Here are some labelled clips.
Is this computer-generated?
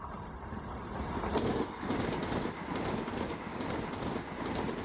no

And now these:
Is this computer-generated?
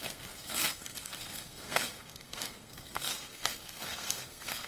yes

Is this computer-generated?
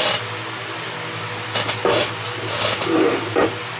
no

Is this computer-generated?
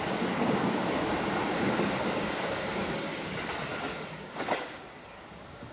yes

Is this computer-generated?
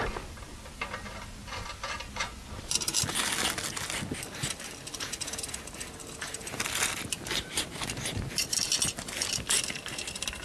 no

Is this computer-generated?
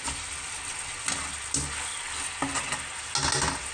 no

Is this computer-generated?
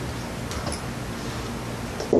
no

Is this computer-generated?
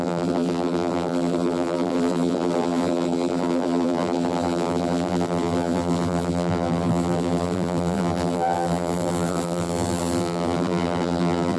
yes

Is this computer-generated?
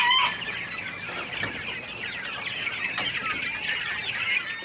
no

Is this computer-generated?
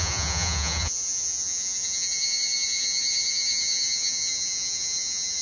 yes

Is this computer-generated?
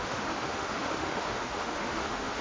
yes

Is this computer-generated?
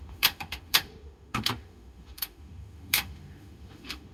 yes